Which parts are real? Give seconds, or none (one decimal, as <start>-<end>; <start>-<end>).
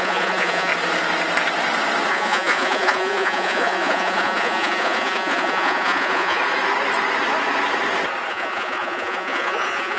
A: 0.7-2.1; 6.4-8.3